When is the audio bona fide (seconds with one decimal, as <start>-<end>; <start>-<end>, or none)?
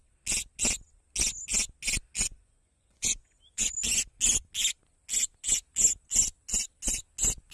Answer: 0.0-2.3; 3.7-7.5